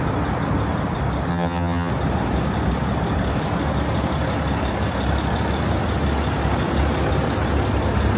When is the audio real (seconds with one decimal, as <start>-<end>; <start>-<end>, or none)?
0.0-1.3; 1.9-8.2